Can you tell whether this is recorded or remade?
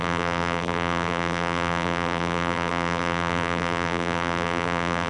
remade